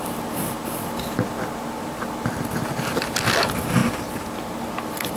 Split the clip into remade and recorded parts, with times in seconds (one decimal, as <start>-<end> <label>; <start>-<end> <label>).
0.0-5.2 recorded